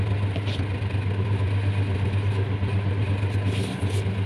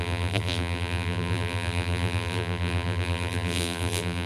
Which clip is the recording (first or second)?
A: first